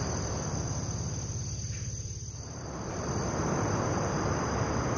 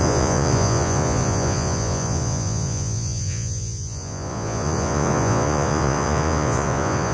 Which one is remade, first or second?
second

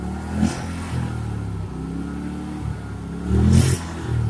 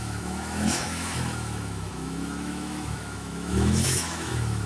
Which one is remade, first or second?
second